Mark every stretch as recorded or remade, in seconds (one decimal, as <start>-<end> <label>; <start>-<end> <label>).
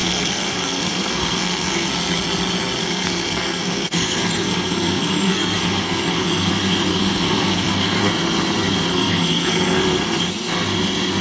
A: 0.0-1.9 remade; 1.9-2.8 recorded; 2.8-6.5 remade; 6.5-6.9 recorded; 6.9-8.0 remade; 8.0-8.9 recorded; 8.9-9.8 remade; 9.8-11.2 recorded